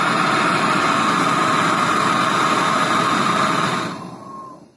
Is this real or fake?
real